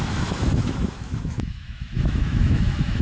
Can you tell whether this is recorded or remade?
remade